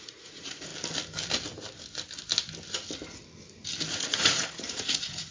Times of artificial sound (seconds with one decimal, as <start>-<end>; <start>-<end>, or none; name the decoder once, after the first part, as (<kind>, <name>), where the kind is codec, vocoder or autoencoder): 0.0-0.7 (vocoder, Vocos); 3.9-5.3